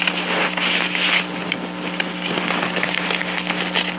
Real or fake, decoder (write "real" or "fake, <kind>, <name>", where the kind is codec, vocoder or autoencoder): real